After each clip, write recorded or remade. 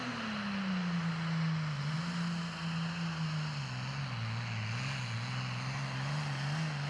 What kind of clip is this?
recorded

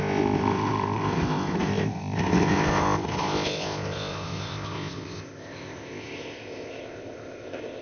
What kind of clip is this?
remade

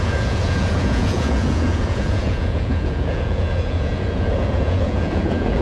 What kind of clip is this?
remade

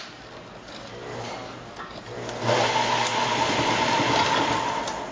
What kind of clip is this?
recorded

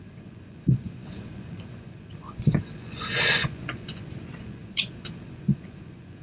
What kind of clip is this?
remade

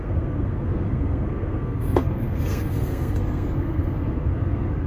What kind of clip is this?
remade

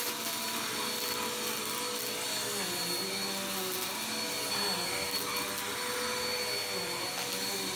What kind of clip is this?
recorded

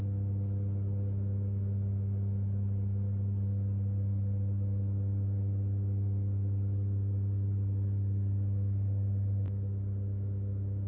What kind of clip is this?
recorded